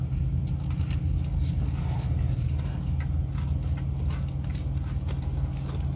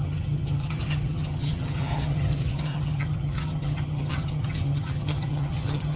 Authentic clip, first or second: first